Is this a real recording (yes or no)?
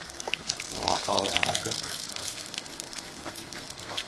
no